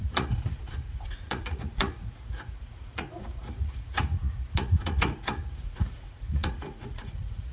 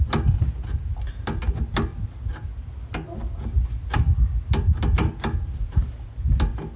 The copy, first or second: first